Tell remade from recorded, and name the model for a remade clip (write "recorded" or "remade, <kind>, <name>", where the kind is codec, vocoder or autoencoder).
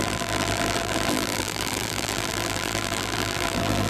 remade, vocoder, BigVGAN v2